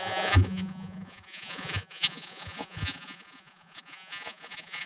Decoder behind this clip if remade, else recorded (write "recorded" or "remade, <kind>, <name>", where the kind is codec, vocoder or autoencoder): remade, vocoder, Vocos